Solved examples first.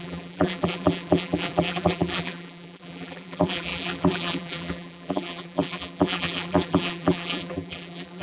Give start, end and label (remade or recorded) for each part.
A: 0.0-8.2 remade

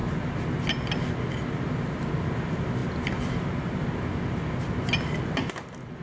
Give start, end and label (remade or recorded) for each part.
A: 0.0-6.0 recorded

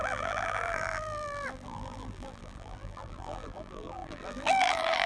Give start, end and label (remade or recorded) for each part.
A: 0.0-5.1 remade

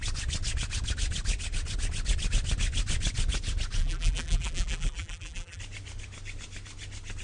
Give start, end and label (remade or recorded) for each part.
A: 0.0-3.8 recorded; 3.8-5.6 remade; 5.6-7.2 recorded